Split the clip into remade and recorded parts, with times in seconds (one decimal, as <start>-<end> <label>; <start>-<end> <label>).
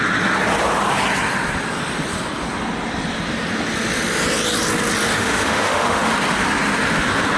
0.0-5.2 recorded; 5.2-6.1 remade; 6.1-7.4 recorded